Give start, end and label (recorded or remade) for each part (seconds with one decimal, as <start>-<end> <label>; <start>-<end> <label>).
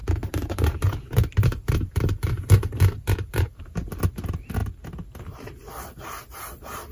0.0-3.6 remade; 3.6-6.9 recorded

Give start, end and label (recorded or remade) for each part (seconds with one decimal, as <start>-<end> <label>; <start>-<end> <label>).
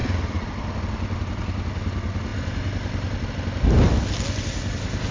0.0-0.8 remade; 0.8-5.1 recorded